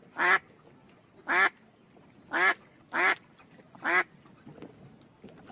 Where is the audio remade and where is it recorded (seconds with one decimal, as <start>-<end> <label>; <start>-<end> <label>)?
0.0-2.5 recorded; 2.5-3.5 remade; 3.5-5.5 recorded